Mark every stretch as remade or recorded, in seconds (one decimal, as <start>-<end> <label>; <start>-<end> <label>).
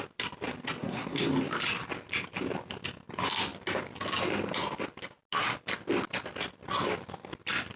0.0-0.8 recorded; 0.8-1.3 remade; 1.3-7.8 recorded